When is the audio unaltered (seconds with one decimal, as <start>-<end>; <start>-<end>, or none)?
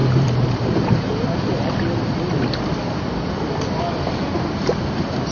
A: 1.7-5.3